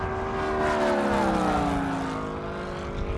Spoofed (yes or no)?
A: no